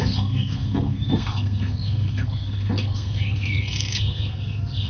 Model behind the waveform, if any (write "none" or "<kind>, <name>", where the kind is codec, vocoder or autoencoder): codec, SNAC